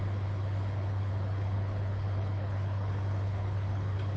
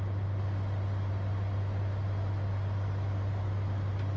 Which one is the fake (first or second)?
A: first